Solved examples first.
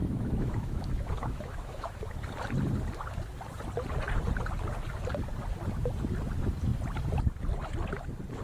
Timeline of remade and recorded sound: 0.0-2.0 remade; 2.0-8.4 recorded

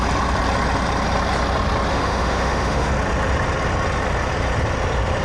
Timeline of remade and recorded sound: 0.0-1.9 recorded; 1.9-2.9 remade; 2.9-5.2 recorded

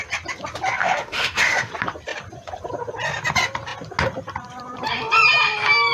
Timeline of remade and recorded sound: 0.0-0.8 recorded; 0.8-1.7 remade; 1.7-5.9 recorded

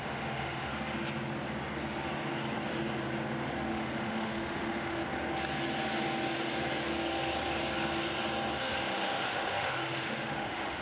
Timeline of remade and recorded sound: 0.0-0.7 remade; 0.7-3.7 recorded; 3.7-5.0 remade; 5.0-8.6 recorded; 8.6-10.8 remade

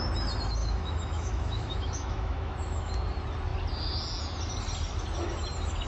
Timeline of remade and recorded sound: 0.0-0.6 recorded; 0.6-2.9 remade; 2.9-5.9 recorded

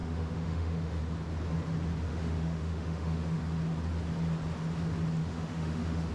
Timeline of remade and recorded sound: 0.0-1.0 remade; 1.0-2.1 recorded; 2.1-3.4 remade; 3.4-5.2 recorded; 5.2-6.1 remade

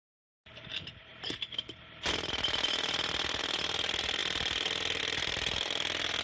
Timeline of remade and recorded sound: 0.0-6.2 recorded